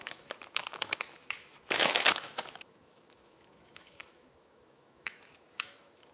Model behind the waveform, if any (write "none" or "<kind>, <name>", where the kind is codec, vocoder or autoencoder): autoencoder, DAC-VAE